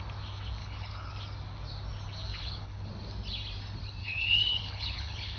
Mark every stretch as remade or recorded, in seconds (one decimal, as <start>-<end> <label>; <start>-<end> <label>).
0.0-0.6 recorded; 0.6-1.1 remade; 1.1-2.3 recorded; 2.3-2.9 remade; 2.9-4.0 recorded; 4.0-5.4 remade

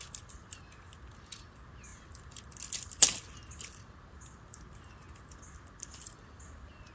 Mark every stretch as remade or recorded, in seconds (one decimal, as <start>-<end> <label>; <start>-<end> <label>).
0.0-6.9 recorded

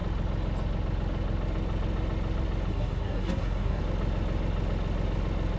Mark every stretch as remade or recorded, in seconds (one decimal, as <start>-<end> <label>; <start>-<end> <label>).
0.0-2.7 recorded; 2.7-3.8 remade; 3.8-5.6 recorded